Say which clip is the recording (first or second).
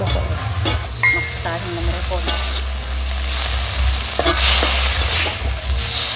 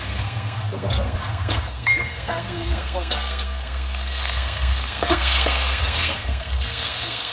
first